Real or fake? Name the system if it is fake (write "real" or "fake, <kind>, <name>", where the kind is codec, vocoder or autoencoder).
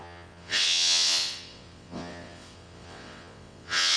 fake, vocoder, WaveNeXt